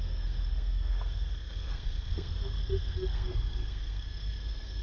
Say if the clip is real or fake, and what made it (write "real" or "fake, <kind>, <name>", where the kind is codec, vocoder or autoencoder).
fake, codec, SNAC